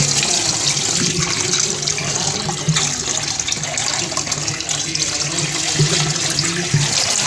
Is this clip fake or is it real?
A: real